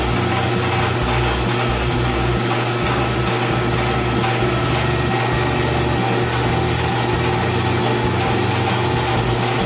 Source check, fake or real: real